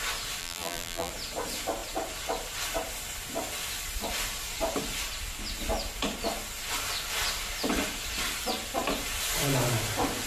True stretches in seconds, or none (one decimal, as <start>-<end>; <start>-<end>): 0.0-0.4; 1.1-10.3